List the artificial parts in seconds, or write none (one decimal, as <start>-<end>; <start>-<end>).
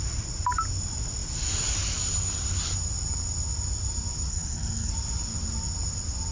4.3-4.9